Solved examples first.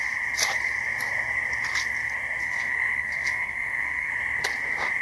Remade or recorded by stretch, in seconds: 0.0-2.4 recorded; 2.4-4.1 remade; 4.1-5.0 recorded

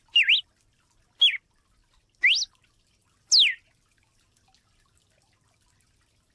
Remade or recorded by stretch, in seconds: 0.0-6.3 recorded

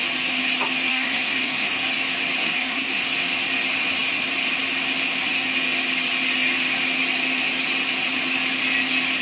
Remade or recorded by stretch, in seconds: 0.0-0.9 recorded; 0.9-1.7 remade; 1.7-2.4 recorded; 2.4-3.0 remade; 3.0-9.2 recorded

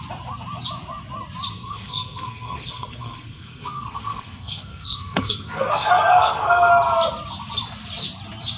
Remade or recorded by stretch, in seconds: 0.0-1.5 recorded; 1.5-6.7 remade; 6.7-8.6 recorded

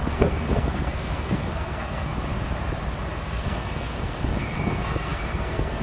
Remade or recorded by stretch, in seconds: 0.0-2.1 remade; 2.1-3.2 recorded; 3.2-5.8 remade